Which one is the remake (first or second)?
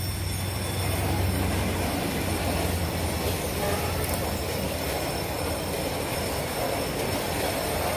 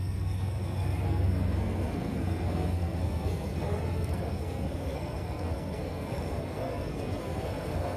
second